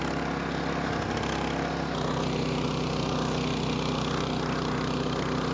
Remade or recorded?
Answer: recorded